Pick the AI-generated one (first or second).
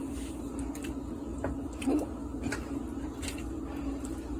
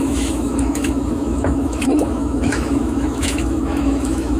second